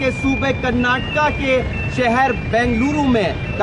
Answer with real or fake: real